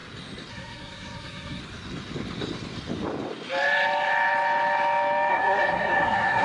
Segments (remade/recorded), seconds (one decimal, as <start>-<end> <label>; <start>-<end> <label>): 0.0-0.5 recorded; 0.5-1.6 remade; 1.6-5.3 recorded; 5.3-6.4 remade